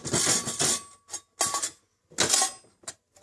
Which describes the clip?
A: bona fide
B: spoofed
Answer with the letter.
A